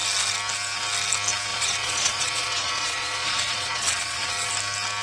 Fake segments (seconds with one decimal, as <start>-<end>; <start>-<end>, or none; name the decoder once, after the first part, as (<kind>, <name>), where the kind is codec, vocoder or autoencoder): 1.5-4.5 (vocoder, Vocos)